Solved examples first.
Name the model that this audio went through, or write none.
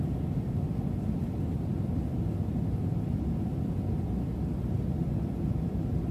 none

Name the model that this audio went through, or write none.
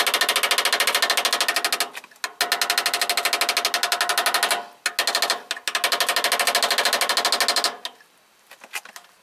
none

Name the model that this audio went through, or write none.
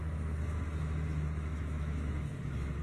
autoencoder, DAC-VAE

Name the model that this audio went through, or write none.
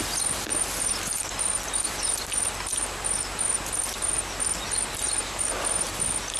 none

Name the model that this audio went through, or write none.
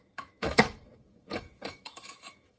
autoencoder, DAC-VAE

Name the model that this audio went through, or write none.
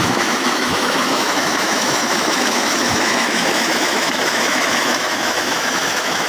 autoencoder, DAC-VAE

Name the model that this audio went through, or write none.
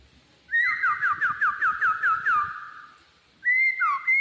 none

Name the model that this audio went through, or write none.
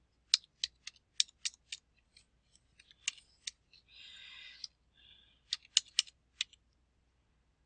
none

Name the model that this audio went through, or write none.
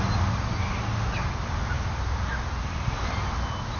none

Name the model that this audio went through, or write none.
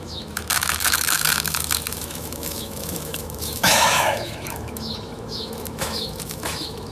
autoencoder, DAC-VAE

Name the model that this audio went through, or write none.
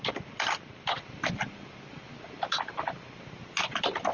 none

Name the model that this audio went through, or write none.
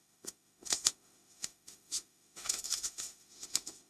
autoencoder, DAC-VAE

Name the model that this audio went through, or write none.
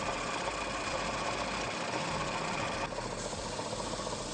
none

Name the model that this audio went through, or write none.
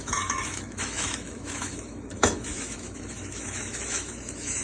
autoencoder, DAC-VAE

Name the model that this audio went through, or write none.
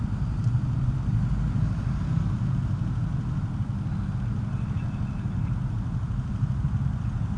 none